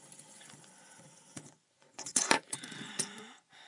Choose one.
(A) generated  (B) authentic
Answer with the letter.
A